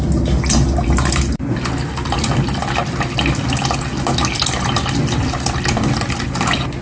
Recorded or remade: recorded